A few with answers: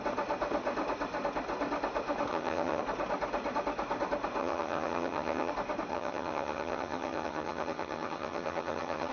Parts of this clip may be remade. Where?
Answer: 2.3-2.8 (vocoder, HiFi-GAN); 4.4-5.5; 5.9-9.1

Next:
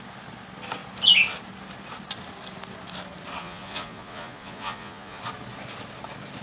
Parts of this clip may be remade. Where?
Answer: 3.4-5.2 (vocoder, Vocos)

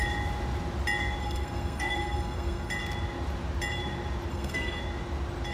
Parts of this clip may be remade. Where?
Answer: 1.2-2.7 (codec, SNAC); 4.3-4.8

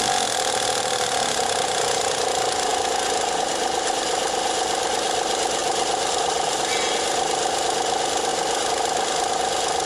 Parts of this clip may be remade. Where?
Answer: 5.6-7.0 (vocoder, BigVGAN v2)

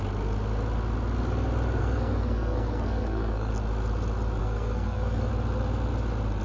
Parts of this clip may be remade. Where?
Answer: 1.8-3.5 (codec, SNAC); 4.4-5.3